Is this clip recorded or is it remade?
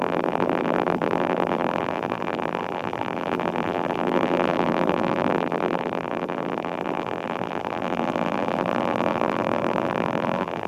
remade